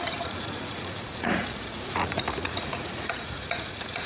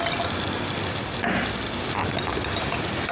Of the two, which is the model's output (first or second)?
first